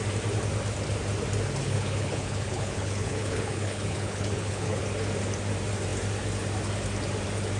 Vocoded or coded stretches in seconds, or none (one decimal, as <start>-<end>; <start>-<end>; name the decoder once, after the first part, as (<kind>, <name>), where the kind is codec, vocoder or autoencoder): 1.6-4.8 (codec, HILCodec)